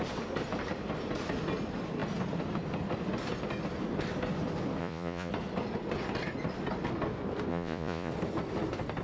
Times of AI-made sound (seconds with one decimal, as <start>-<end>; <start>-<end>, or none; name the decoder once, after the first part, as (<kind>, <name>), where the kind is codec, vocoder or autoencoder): 4.8-5.3 (vocoder, Vocos); 7.5-8.1